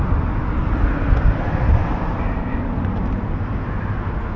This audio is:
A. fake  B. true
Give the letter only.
B